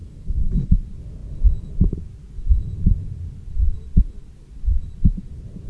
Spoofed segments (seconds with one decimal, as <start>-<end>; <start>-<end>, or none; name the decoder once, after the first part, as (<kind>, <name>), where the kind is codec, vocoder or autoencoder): 0.0-0.7 (codec, SNAC)